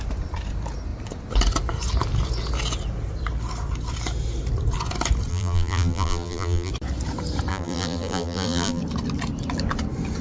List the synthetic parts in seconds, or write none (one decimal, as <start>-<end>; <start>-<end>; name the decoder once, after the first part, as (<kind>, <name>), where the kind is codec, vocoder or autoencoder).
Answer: 5.3-6.7 (vocoder, BigVGAN v2); 7.5-8.8

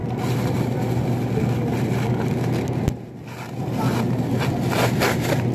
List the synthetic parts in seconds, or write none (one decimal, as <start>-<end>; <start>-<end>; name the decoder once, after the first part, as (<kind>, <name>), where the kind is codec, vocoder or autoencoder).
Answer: none

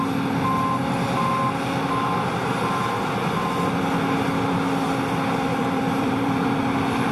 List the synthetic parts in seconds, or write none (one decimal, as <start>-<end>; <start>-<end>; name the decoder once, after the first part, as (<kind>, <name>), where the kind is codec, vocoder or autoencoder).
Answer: 5.5-6.6 (vocoder, BigVGAN v2)

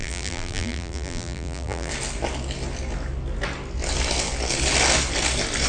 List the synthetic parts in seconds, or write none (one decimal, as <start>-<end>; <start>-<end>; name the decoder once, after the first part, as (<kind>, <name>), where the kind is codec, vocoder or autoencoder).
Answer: 0.0-1.9 (vocoder, BigVGAN v2)